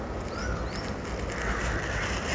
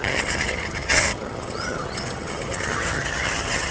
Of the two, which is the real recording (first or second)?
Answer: first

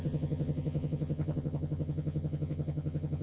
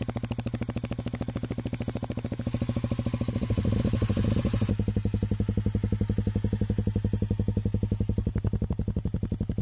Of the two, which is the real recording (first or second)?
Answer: second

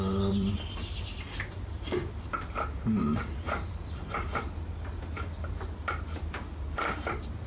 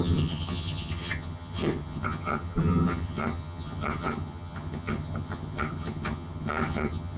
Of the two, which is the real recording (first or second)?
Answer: first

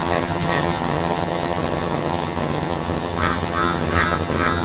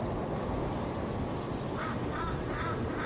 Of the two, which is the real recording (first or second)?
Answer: second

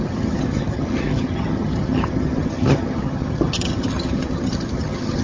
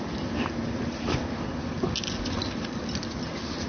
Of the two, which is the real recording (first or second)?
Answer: second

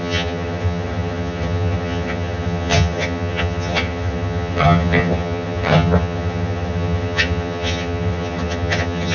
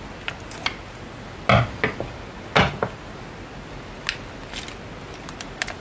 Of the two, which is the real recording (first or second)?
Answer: second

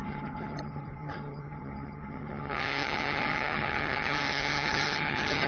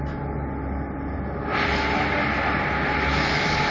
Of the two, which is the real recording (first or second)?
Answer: second